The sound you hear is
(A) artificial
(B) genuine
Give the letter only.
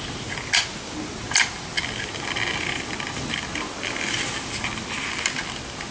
B